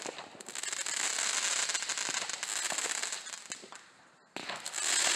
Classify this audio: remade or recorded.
recorded